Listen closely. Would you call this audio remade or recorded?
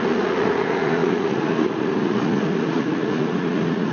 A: remade